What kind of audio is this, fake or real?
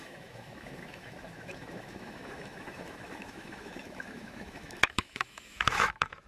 fake